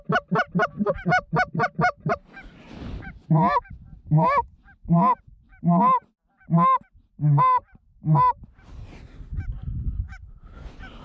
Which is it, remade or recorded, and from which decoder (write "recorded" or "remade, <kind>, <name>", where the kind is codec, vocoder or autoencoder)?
recorded